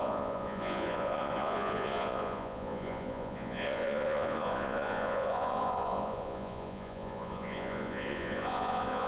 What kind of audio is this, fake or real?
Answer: fake